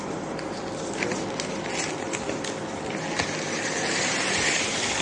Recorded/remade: recorded